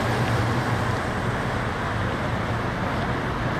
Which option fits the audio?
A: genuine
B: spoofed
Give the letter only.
A